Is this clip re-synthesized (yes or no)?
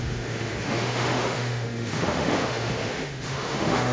yes